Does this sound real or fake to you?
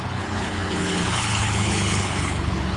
fake